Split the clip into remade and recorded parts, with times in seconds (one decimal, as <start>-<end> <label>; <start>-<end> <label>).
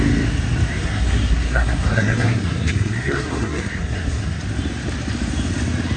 0.0-0.8 recorded; 0.8-4.4 remade; 4.4-6.0 recorded